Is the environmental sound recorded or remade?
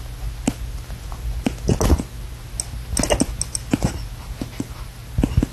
recorded